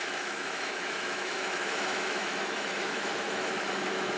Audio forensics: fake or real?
fake